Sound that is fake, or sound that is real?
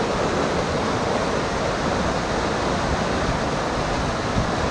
real